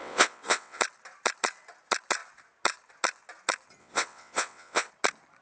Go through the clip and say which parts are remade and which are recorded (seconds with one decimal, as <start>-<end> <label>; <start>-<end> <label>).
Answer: 0.0-0.8 remade; 0.8-3.8 recorded; 3.8-4.9 remade; 4.9-5.4 recorded